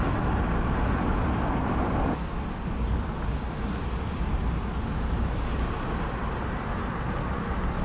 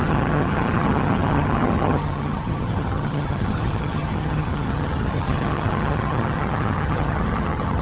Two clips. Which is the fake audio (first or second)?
second